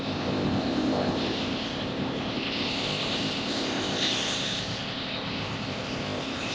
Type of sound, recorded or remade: remade